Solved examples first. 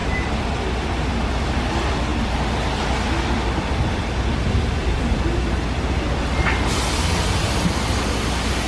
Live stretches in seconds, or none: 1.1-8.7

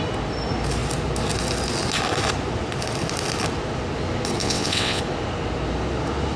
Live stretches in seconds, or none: 0.0-4.4; 5.0-6.4

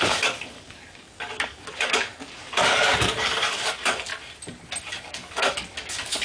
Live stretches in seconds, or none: 4.1-4.9

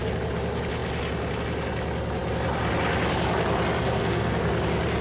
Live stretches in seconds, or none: 0.0-3.8; 4.4-5.0